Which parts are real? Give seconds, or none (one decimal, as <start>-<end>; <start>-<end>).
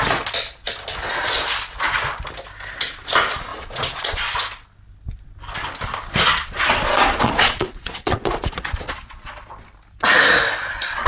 0.0-3.5; 4.2-6.3; 9.3-11.1